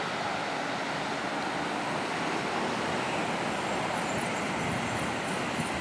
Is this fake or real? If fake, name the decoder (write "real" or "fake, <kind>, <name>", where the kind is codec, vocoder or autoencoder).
real